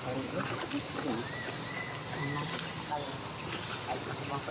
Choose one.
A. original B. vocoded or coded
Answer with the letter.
A